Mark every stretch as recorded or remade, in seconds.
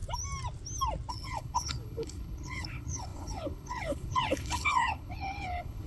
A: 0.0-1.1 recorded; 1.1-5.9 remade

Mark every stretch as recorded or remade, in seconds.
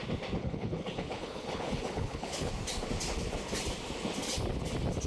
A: 0.0-0.4 recorded; 0.4-2.5 remade; 2.5-5.1 recorded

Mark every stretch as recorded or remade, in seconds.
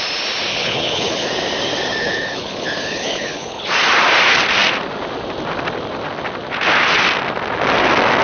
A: 0.0-0.5 recorded; 0.5-1.3 remade; 1.3-2.0 recorded; 2.0-3.7 remade; 3.7-8.2 recorded